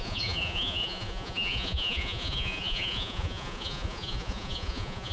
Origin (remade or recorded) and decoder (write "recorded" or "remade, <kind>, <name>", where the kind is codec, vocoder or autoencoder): remade, vocoder, Vocos